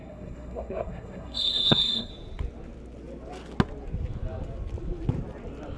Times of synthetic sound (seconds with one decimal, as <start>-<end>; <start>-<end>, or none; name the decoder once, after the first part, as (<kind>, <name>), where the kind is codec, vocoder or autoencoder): 0.0-2.1 (codec, SNAC)